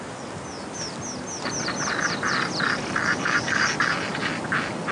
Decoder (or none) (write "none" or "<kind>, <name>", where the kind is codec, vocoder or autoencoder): none